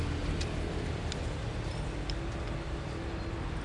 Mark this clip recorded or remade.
recorded